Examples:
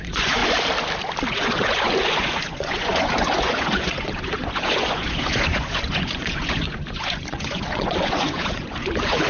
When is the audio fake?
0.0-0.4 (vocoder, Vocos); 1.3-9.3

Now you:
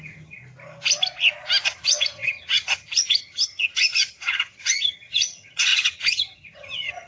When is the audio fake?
0.0-0.4 (vocoder, HiFi-GAN); 1.6-7.1

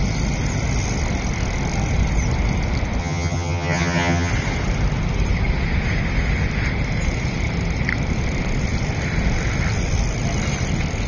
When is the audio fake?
3.0-4.3 (vocoder, HiFi-GAN)

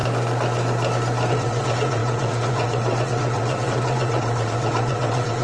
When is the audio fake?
1.3-5.4 (vocoder, WaveNeXt)